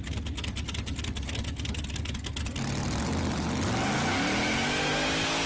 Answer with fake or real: real